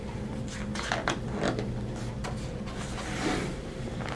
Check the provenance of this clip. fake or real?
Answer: real